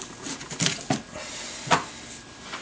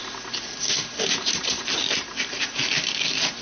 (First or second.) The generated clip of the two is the second